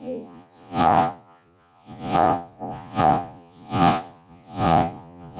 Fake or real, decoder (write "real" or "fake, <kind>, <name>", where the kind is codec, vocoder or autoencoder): fake, vocoder, Vocos